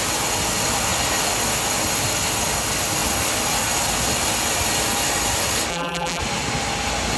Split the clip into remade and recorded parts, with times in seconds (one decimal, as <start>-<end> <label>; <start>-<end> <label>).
0.0-5.7 recorded; 5.7-6.2 remade; 6.2-7.2 recorded